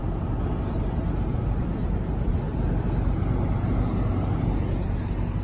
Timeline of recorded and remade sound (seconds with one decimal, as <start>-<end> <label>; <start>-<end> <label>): 0.0-5.4 recorded